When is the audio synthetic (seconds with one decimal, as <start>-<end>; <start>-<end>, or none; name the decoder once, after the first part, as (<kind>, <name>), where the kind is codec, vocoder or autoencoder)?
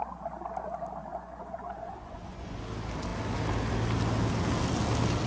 1.1-2.6 (vocoder, Vocos)